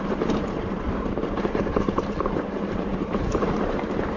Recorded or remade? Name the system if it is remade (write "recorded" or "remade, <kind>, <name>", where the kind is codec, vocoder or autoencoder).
remade, vocoder, BigVGAN v2